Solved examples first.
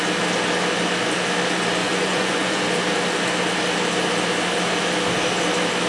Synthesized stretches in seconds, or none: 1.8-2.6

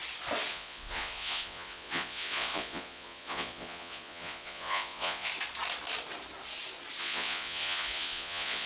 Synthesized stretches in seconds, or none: 0.5-5.3; 7.0-8.7